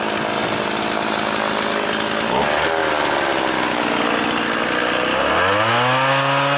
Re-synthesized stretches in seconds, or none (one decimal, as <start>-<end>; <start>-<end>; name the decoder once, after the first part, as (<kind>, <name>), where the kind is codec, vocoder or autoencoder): 0.4-1.1 (vocoder, BigVGAN v2); 2.8-5.3